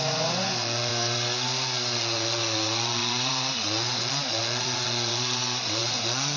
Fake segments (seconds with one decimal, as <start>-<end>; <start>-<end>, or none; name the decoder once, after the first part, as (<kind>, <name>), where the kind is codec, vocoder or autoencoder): 0.0-0.9 (vocoder, Vocos); 2.0-6.4